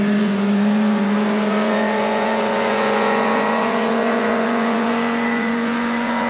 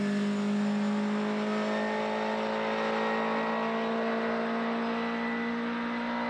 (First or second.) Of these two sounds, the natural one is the second